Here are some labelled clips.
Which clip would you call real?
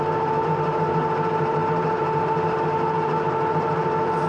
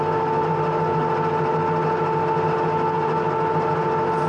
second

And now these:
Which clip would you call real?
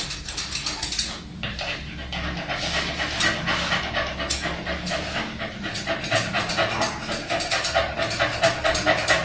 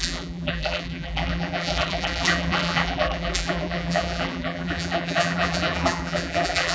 first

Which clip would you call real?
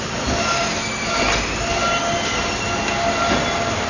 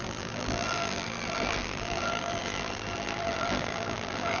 first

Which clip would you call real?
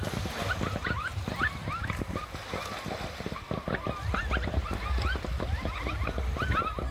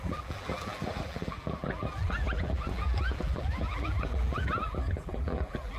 first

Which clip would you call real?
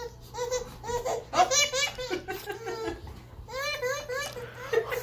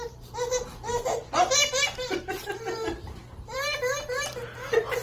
first